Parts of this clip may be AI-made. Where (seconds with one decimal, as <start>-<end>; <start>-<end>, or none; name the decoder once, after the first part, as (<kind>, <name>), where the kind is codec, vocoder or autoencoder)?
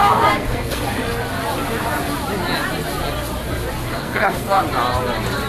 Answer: 0.0-0.8 (codec, SNAC); 3.8-4.6